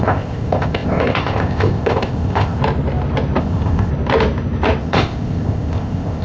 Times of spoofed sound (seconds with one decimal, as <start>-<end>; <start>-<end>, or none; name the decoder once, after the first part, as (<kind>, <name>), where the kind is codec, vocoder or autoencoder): 0.0-2.6 (codec, ZipCodec); 3.4-3.9; 4.8-6.2